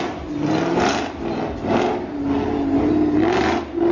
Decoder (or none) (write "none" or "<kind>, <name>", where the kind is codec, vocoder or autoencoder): none